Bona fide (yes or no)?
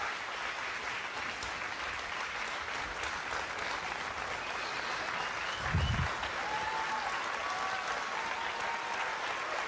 yes